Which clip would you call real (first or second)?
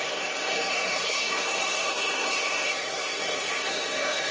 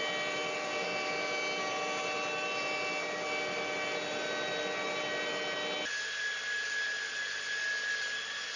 second